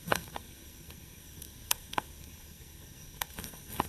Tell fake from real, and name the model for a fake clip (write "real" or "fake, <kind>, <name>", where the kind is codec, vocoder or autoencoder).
fake, codec, SNAC